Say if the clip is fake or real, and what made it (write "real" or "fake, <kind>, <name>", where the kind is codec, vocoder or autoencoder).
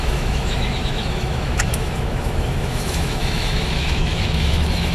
fake, autoencoder, DAC-VAE